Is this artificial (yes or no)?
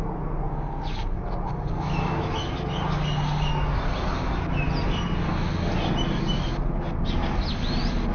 no